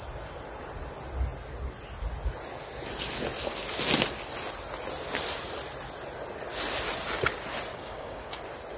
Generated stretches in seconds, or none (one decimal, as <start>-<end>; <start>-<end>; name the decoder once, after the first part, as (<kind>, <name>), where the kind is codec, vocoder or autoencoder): 7.7-8.4 (codec, DAC)